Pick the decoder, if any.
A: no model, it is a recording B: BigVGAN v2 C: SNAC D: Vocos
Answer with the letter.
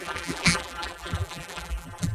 B